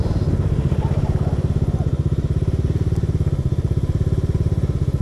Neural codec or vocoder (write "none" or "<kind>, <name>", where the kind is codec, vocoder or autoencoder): none